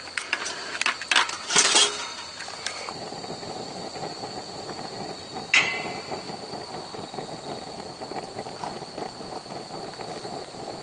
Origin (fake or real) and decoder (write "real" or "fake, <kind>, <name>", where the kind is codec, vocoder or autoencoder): real